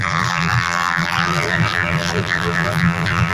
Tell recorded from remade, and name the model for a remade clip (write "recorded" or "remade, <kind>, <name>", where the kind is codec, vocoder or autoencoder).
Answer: remade, vocoder, BigVGAN v2